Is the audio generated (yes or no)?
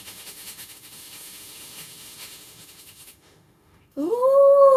yes